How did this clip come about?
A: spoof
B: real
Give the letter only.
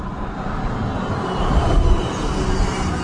B